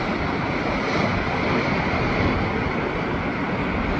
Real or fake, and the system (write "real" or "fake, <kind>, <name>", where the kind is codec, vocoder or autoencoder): real